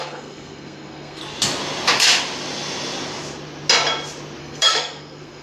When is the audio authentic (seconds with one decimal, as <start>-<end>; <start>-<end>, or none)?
1.2-4.4